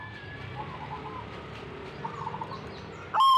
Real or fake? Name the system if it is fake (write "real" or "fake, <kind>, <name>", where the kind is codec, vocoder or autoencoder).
real